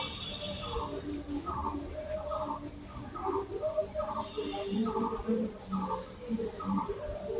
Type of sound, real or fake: real